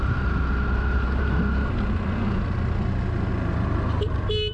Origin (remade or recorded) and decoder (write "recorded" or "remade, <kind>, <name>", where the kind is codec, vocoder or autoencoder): recorded